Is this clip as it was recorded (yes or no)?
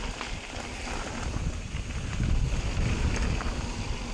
yes